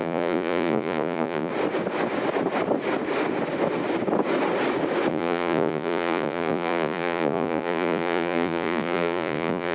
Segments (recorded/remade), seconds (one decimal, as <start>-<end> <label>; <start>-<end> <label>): 0.0-1.5 remade; 1.5-5.1 recorded; 5.1-9.7 remade